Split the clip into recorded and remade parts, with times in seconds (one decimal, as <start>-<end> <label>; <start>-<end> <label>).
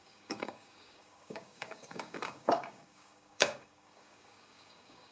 0.0-5.1 remade